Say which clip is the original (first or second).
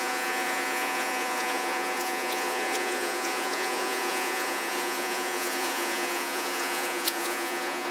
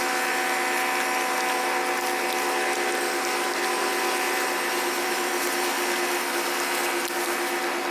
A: second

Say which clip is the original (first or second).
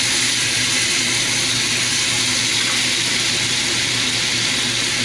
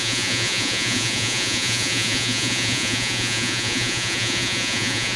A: first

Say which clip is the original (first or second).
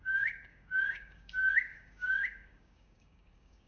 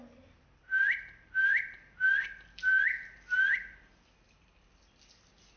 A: second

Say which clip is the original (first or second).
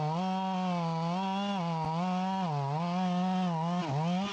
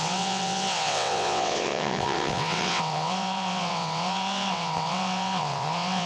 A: first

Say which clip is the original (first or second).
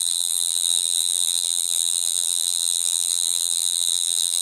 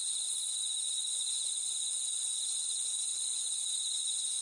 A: second